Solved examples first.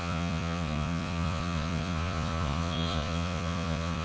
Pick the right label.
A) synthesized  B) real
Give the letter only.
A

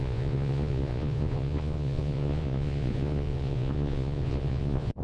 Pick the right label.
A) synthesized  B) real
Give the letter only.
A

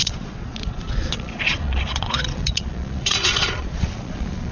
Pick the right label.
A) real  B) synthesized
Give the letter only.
B